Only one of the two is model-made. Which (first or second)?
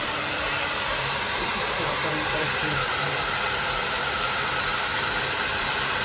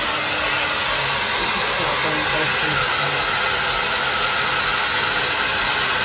first